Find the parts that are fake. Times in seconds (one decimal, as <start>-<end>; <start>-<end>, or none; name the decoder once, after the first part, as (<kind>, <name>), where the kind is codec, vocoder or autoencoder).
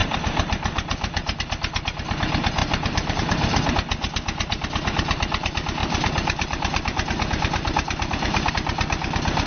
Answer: 0.0-1.4 (vocoder, BigVGAN v2); 2.6-3.7; 5.8-8.5